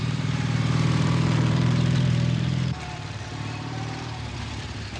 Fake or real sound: fake